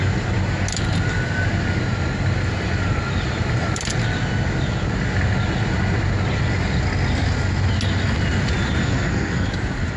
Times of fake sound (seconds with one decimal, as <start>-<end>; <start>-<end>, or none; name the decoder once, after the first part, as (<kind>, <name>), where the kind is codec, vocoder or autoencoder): 8.8-9.5 (codec, SNAC)